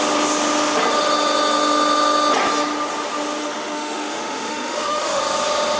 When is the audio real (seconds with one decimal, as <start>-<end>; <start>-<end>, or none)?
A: 0.0-3.4; 5.2-5.8